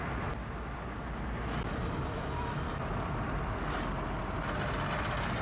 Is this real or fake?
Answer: real